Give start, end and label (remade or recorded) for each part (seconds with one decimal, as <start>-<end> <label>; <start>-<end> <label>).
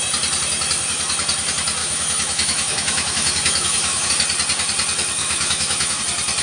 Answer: 0.0-1.8 recorded; 1.8-4.1 remade; 4.1-5.2 recorded; 5.2-6.0 remade; 6.0-6.4 recorded